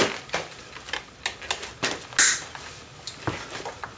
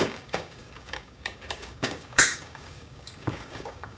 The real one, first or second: first